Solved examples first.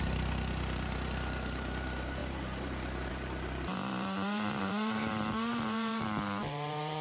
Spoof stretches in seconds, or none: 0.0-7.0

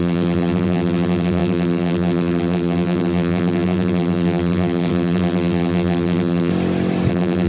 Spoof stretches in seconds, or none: 0.0-6.5; 7.1-7.5

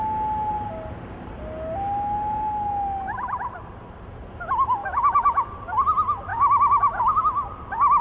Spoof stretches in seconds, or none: 4.8-5.5; 6.3-7.2

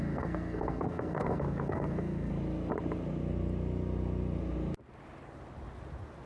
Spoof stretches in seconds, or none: 0.0-2.3

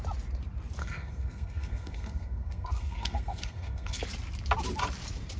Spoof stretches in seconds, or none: 0.8-4.0